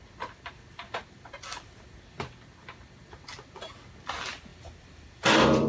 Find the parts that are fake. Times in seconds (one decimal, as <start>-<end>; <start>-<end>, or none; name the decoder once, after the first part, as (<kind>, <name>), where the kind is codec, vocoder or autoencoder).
4.5-5.7 (vocoder, BigVGAN v2)